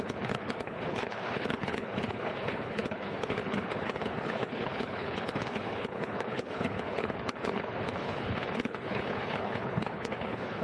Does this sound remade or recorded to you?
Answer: remade